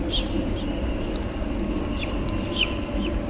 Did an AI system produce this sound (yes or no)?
no